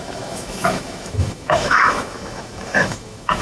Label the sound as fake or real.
fake